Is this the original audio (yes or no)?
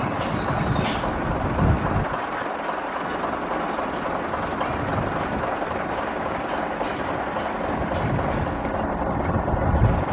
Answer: yes